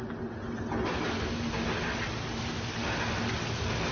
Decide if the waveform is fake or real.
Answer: real